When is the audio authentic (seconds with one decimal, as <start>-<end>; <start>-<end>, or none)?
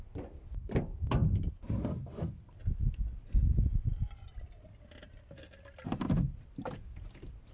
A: 0.0-7.5